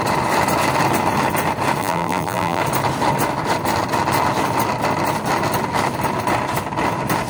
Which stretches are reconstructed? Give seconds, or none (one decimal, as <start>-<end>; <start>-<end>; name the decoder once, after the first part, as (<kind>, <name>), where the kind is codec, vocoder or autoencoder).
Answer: 1.8-2.6 (vocoder, BigVGAN v2)